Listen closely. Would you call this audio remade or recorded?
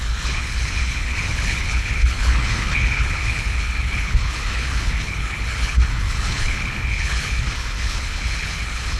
remade